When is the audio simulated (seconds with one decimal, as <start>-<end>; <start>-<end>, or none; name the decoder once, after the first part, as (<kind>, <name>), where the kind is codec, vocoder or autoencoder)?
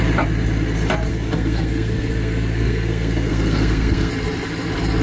1.1-4.1 (codec, SNAC)